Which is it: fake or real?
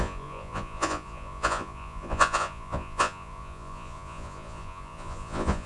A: fake